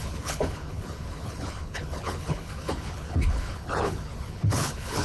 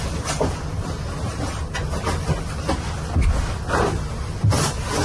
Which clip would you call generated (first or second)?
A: first